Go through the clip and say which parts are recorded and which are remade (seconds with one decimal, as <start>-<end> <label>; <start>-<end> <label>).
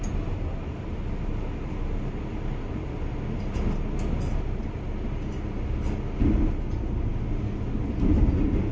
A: 0.0-8.7 recorded